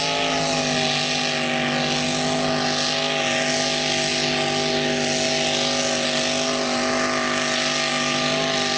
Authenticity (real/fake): real